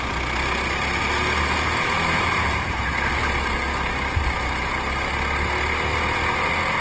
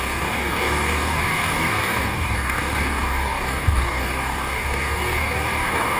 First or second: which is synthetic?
second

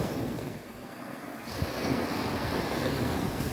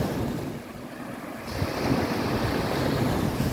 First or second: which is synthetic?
first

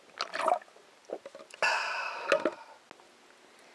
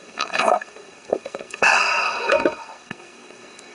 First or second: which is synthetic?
second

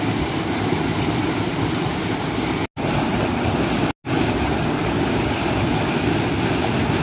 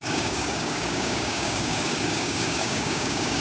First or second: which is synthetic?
second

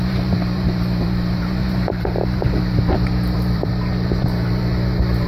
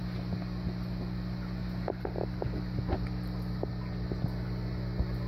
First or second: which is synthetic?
first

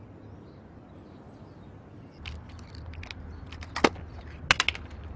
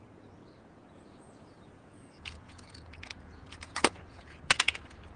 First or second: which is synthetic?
second